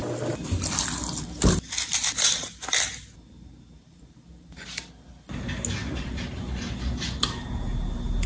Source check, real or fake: real